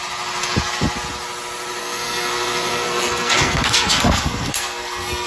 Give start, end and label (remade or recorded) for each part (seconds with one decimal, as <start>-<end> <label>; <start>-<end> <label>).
0.0-1.8 recorded; 1.8-5.3 remade